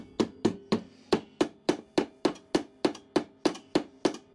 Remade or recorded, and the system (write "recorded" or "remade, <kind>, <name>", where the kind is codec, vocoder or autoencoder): recorded